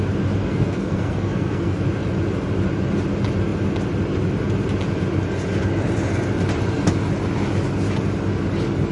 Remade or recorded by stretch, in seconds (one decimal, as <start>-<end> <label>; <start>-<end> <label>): 0.0-0.4 recorded; 0.4-1.8 remade; 1.8-8.9 recorded